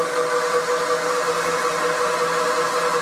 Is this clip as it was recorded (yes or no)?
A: yes